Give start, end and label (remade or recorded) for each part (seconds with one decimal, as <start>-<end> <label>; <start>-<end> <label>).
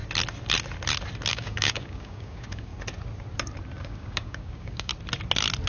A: 0.0-1.3 recorded; 1.3-2.7 remade; 2.7-3.8 recorded; 3.8-4.9 remade; 4.9-5.7 recorded